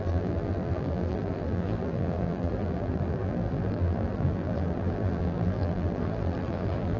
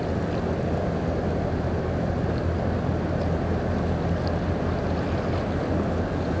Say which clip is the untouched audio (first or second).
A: second